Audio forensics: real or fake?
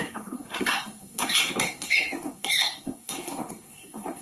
fake